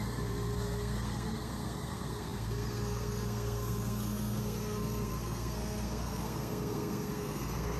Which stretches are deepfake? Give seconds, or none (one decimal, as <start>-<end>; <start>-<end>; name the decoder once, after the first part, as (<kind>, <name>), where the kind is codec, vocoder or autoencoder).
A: 0.0-7.8 (codec, SNAC)